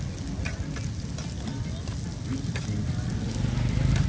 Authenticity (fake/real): real